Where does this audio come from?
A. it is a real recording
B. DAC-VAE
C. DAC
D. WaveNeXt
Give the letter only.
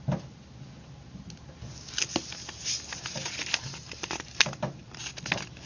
A